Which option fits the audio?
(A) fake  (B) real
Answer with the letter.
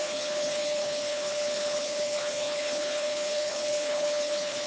A